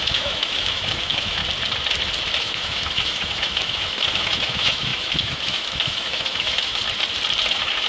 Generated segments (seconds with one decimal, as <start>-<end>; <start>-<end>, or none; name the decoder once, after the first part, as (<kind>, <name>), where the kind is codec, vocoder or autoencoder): 0.0-1.4 (autoencoder, DAC-VAE); 2.4-6.8; 7.5-7.9